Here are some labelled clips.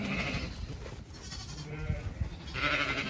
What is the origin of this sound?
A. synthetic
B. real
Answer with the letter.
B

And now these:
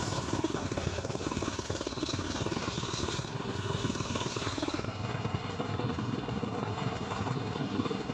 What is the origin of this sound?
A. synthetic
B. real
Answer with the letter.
A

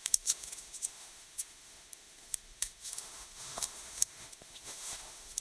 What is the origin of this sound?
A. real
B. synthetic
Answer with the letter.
B